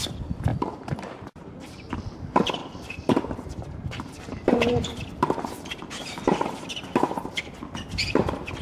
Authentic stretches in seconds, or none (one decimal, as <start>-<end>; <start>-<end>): 0.0-0.5; 1.9-2.6; 6.7-8.6